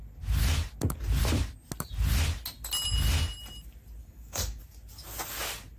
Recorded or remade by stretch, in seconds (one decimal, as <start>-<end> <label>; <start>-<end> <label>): 0.0-4.0 recorded; 4.0-4.6 remade; 4.6-5.8 recorded